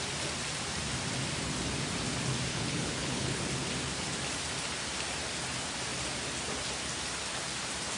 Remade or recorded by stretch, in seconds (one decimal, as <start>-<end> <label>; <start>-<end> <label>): 0.0-2.5 recorded; 2.5-3.4 remade; 3.4-8.0 recorded

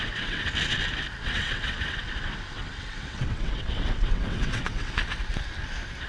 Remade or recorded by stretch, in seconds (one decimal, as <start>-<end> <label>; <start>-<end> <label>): 0.0-0.5 remade; 0.5-1.2 recorded; 1.2-4.9 remade; 4.9-6.1 recorded

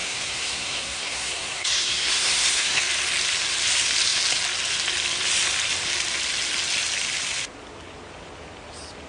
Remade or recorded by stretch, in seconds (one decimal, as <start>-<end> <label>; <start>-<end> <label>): 0.0-2.8 remade; 2.8-9.1 recorded

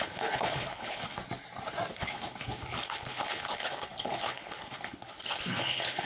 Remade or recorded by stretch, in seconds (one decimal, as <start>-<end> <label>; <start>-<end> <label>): 0.0-1.2 remade; 1.2-1.9 recorded; 1.9-6.1 remade

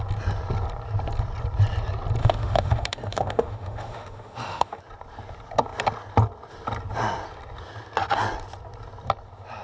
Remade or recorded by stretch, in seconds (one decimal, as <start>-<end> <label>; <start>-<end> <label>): 0.0-2.2 recorded; 2.2-4.8 remade; 4.8-9.6 recorded

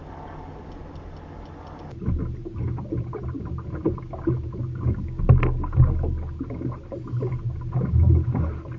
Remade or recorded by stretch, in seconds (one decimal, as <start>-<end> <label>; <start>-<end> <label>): 0.0-4.7 recorded; 4.7-5.2 remade; 5.2-8.8 recorded

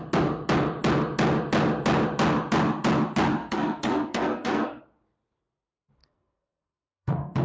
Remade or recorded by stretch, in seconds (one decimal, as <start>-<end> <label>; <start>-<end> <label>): 0.0-3.4 recorded; 3.4-4.8 remade; 4.8-6.0 recorded; 6.0-7.4 remade

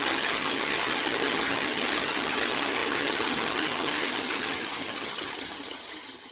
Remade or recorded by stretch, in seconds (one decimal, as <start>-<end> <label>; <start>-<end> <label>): 0.0-6.3 remade